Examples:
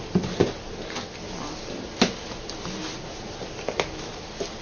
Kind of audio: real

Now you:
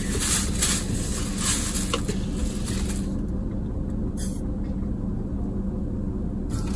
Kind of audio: real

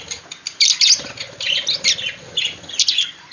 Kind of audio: real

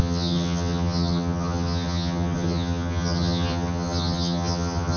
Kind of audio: fake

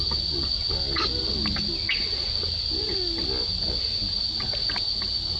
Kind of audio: real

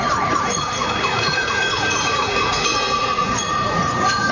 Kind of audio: fake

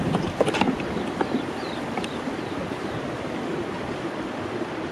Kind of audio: fake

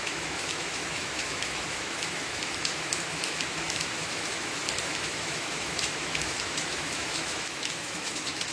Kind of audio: fake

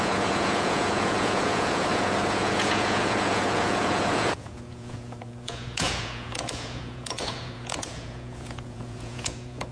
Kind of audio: fake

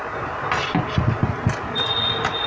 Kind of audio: real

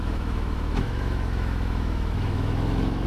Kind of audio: fake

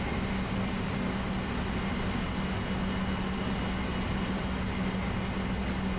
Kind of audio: real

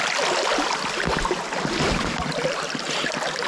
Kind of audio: real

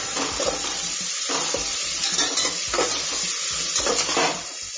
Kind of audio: real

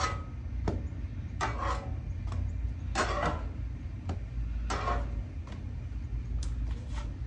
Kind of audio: real